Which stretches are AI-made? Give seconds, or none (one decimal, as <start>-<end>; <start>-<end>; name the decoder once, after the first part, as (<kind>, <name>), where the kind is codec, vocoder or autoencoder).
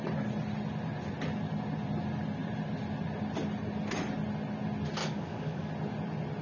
5.0-5.7 (codec, DAC)